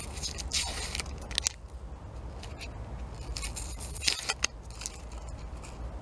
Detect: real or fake real